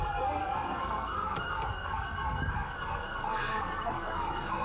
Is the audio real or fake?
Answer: fake